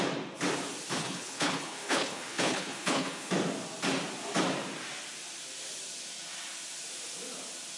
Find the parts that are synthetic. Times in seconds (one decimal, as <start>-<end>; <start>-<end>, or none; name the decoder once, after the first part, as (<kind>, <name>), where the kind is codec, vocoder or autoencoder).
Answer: 1.0-3.3 (codec, HILCodec)